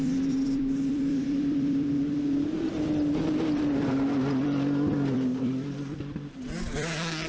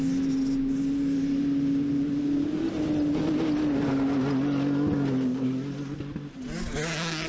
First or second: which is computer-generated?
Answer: first